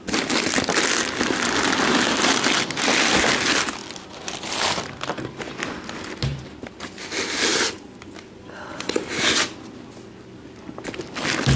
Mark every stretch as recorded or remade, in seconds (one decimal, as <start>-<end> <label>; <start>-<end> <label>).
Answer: 0.0-6.3 recorded; 6.3-6.8 remade; 6.8-7.5 recorded; 7.5-8.1 remade; 8.1-11.6 recorded